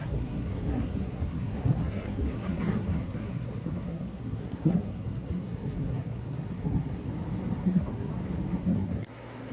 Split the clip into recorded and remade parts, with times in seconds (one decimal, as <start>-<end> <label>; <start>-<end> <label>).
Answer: 0.0-7.1 remade; 7.1-7.6 recorded; 7.6-8.1 remade; 8.1-8.6 recorded; 8.6-9.5 remade